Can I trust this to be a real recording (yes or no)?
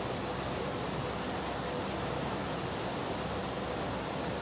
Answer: yes